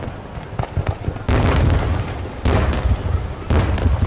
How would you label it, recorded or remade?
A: remade